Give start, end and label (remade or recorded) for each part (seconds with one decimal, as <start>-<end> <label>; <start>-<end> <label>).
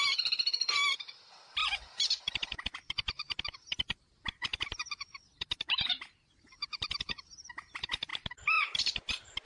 0.0-8.1 remade; 8.1-8.8 recorded; 8.8-9.5 remade